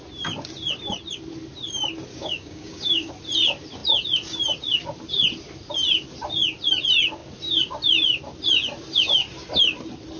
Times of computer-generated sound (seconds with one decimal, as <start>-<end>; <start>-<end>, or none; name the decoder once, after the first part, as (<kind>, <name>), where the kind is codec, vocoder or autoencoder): 2.1-3.1 (codec, DAC)